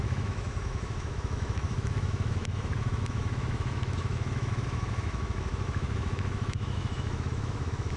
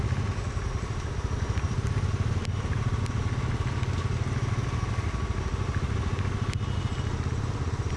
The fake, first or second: first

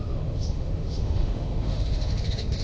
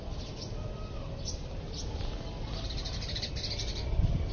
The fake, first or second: first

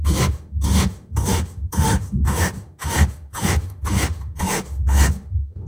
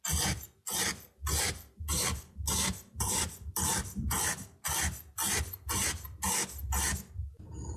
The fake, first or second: first